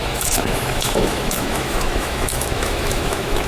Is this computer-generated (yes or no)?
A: yes